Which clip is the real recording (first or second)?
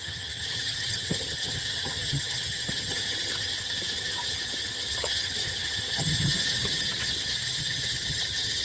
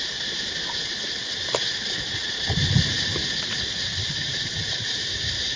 second